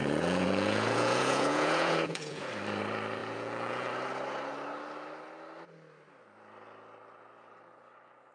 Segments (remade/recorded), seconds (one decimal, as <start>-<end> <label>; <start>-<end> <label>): 0.0-2.5 remade; 2.5-3.2 recorded; 3.2-3.9 remade; 3.9-8.3 recorded